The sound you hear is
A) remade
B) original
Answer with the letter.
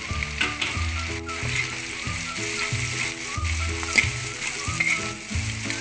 B